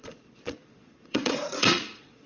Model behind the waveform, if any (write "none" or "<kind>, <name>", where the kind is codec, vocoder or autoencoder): vocoder, Vocos